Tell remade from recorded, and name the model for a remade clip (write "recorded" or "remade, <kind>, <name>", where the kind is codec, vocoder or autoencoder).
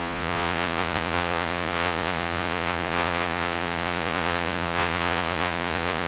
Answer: remade, vocoder, Vocos